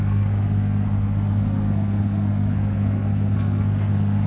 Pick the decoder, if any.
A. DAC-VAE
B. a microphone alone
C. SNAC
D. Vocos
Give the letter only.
C